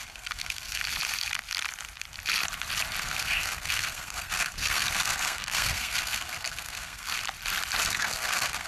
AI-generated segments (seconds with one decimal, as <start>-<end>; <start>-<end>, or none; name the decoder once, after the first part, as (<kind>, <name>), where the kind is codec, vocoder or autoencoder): 0.0-0.8 (codec, SNAC); 3.0-7.1; 7.8-8.7